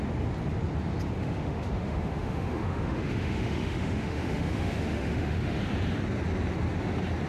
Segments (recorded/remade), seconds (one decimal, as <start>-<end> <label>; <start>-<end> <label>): 0.0-1.2 recorded; 1.2-5.6 remade; 5.6-7.3 recorded